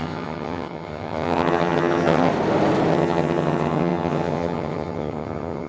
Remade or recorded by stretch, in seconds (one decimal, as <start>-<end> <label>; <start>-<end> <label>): 0.0-2.3 remade; 2.3-2.9 recorded; 2.9-5.7 remade